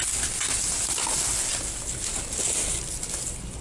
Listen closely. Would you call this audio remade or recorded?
recorded